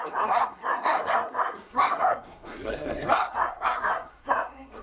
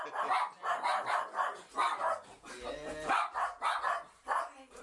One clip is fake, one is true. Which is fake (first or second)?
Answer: first